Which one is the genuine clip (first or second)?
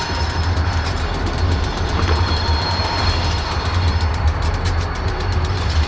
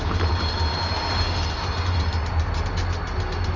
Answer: second